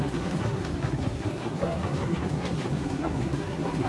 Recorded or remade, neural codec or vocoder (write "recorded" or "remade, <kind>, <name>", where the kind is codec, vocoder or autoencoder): remade, codec, SNAC